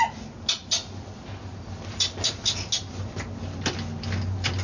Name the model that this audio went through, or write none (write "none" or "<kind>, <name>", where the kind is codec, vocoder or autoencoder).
none